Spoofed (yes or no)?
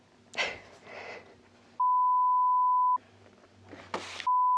no